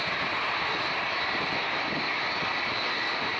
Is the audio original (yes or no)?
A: yes